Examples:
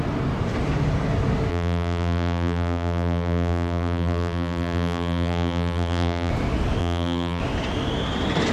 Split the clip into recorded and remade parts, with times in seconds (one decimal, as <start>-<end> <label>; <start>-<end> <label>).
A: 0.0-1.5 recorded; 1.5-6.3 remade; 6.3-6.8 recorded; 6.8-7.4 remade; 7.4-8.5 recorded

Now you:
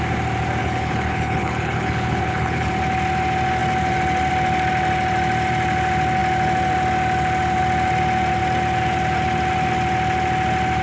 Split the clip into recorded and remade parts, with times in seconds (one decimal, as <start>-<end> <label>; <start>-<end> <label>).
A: 0.0-0.6 recorded; 0.6-2.7 remade; 2.7-10.8 recorded

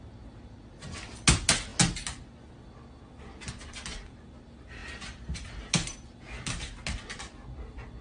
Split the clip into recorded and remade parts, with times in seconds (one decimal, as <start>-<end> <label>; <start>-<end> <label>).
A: 0.0-8.0 recorded